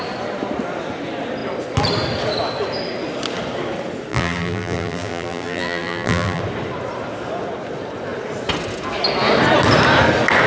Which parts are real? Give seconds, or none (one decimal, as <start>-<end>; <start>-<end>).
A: 0.0-4.1; 6.4-10.5